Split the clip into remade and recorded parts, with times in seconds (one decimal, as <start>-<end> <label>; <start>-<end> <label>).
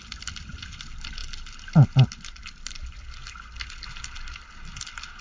0.0-5.2 recorded